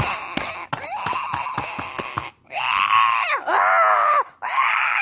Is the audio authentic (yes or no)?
yes